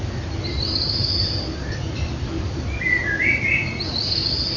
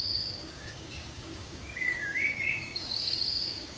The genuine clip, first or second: first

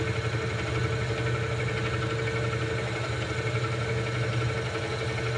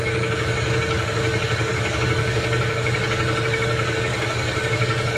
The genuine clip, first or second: first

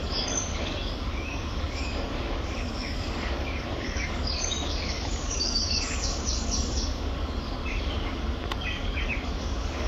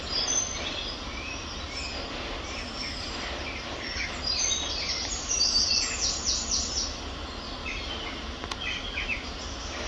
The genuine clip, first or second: second